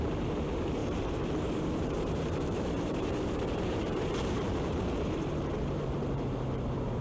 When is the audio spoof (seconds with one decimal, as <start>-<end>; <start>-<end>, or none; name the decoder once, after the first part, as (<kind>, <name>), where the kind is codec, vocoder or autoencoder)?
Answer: 0.0-7.0 (vocoder, BigVGAN v2)